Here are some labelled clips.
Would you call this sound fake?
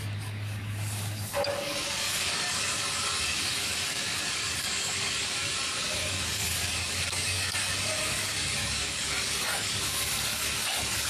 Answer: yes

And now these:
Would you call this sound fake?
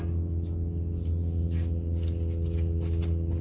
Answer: no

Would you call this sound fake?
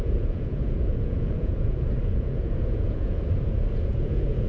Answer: yes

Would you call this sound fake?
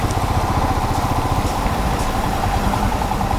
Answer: no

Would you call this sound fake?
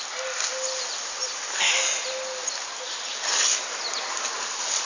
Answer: no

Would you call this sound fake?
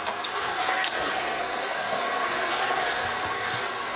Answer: yes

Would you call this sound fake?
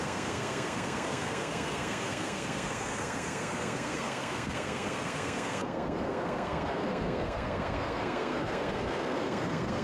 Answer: yes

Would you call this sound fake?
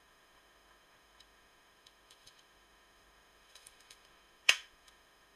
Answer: yes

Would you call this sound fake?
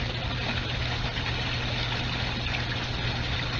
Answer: no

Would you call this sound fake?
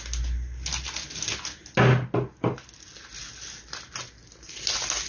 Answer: no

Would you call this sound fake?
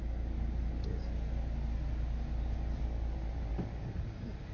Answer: no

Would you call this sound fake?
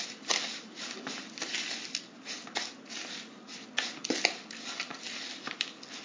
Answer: no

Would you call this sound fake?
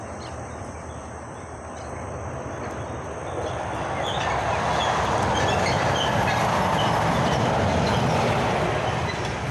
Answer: no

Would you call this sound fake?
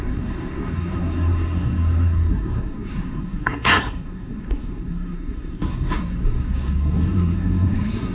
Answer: yes